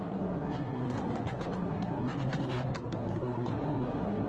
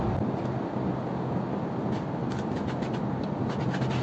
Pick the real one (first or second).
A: second